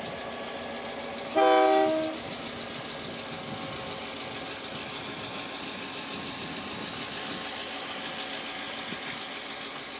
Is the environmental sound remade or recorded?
recorded